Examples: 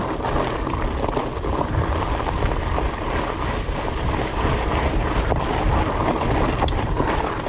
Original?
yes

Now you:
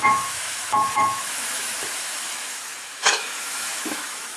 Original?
no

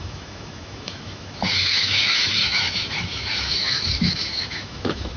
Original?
no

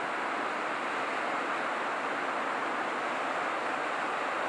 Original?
yes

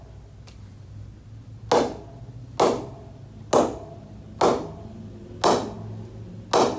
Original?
yes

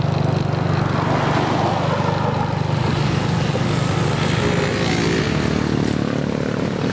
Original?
yes